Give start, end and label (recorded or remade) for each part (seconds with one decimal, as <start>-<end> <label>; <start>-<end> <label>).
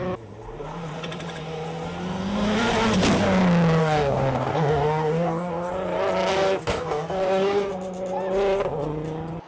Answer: 0.0-3.8 recorded; 3.8-5.7 remade; 5.7-6.3 recorded; 6.3-7.7 remade; 7.7-9.5 recorded